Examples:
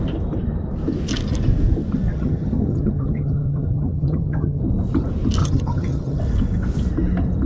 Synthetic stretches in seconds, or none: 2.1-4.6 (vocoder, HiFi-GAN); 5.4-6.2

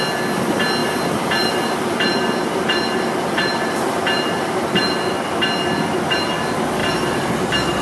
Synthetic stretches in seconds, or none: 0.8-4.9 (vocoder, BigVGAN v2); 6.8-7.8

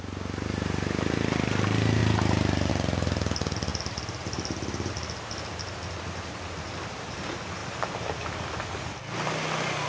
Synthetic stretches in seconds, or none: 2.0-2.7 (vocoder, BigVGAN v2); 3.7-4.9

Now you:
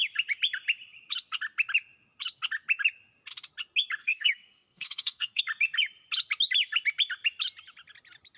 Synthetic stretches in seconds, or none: 4.0-5.4 (codec, SNAC)

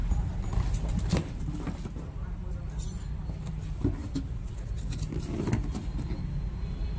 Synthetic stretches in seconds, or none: 0.0-1.2 (vocoder, BigVGAN v2)

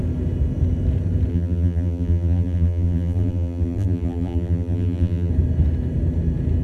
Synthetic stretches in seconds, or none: 1.3-5.3 (vocoder, BigVGAN v2)

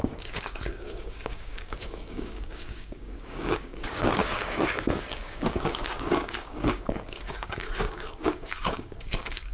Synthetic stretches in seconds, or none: 0.0-9.5 (codec, DAC)

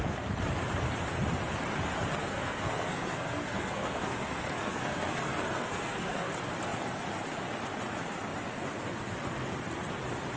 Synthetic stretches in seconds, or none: 2.2-6.3 (codec, SNAC)